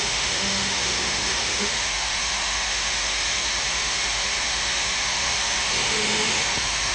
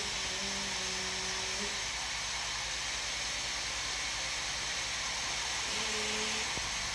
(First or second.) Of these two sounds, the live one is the second